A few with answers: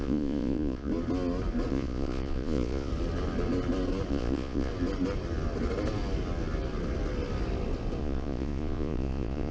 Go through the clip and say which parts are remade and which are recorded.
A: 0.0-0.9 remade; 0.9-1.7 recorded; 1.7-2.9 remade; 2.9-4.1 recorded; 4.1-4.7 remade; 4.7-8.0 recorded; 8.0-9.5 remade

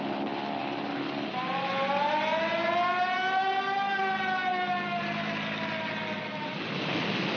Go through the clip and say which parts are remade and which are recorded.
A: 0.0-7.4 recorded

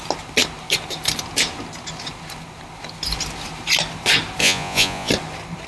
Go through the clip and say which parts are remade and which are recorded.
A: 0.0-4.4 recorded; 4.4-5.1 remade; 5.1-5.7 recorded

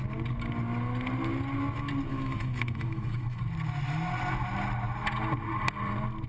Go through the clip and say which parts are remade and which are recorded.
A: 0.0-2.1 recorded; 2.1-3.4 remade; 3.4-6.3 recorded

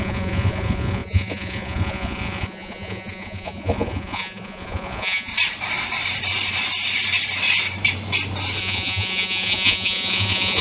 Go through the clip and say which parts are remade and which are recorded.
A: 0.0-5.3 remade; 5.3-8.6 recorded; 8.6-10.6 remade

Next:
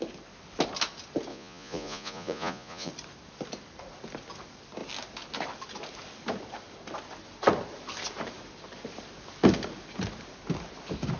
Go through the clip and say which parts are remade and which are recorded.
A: 0.0-1.3 recorded; 1.3-2.9 remade; 2.9-11.2 recorded

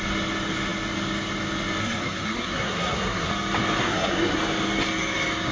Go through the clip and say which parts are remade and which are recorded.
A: 0.0-1.8 recorded; 1.8-3.3 remade; 3.3-3.8 recorded; 3.8-4.4 remade; 4.4-5.5 recorded

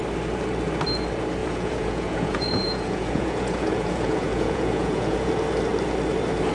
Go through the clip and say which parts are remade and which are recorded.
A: 0.0-1.4 recorded; 1.4-5.3 remade; 5.3-6.5 recorded